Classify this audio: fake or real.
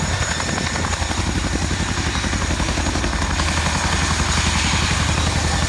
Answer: real